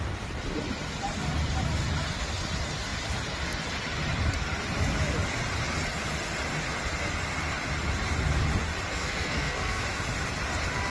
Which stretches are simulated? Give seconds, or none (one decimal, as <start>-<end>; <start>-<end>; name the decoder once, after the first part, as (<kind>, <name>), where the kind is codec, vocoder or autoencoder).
8.9-9.8 (codec, SNAC)